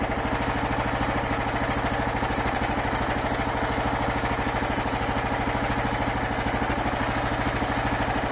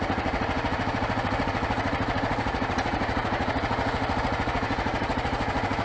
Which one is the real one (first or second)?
first